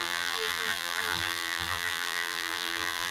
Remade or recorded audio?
remade